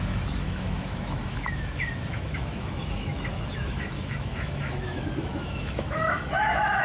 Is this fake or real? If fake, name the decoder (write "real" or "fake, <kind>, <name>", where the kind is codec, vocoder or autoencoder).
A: fake, autoencoder, DAC-VAE